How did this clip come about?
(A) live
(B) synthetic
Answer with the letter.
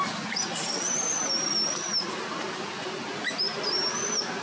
A